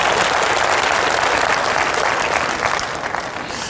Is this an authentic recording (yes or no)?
yes